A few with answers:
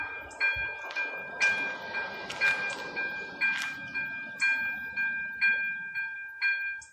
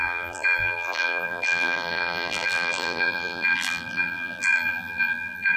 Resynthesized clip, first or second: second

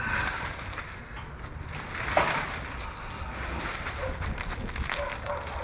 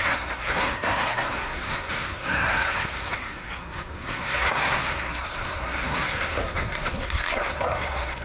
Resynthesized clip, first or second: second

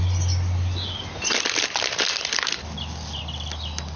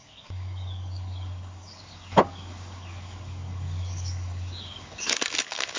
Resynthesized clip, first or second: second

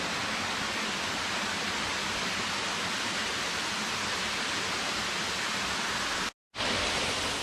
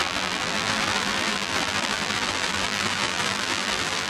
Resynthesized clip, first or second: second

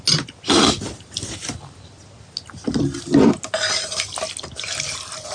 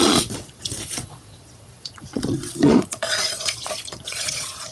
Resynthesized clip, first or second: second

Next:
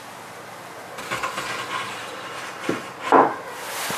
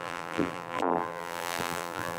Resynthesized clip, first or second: second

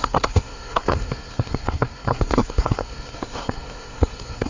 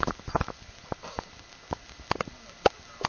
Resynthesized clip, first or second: first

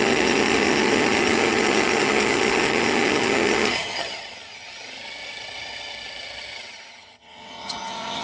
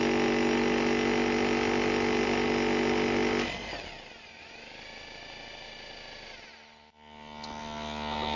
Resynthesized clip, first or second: first